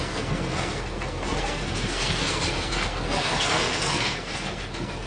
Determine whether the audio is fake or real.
fake